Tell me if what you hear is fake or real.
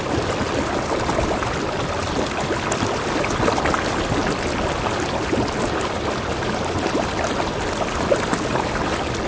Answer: real